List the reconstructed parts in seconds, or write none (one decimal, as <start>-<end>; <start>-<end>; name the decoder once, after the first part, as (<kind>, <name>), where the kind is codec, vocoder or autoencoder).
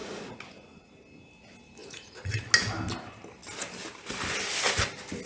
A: 0.0-0.9 (vocoder, Vocos); 1.8-2.3